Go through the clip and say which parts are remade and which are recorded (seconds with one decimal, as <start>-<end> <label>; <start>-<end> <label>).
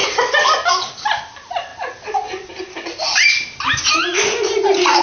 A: 0.0-5.0 recorded